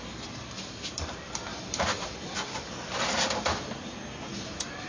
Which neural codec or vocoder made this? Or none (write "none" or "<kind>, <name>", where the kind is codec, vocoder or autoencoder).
vocoder, BigVGAN v2